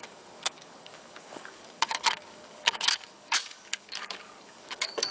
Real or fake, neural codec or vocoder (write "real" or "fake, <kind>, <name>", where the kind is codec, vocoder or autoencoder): fake, codec, DAC